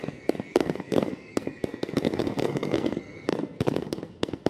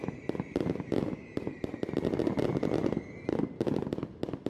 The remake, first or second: first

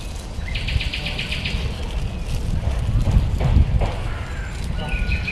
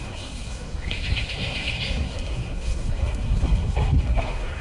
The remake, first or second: second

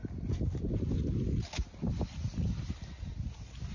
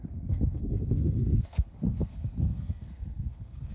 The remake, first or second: second